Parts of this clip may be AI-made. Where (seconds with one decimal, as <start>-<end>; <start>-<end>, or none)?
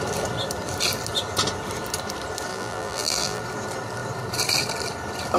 2.5-3.4